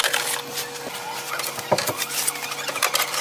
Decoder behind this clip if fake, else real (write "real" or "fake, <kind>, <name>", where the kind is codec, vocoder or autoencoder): real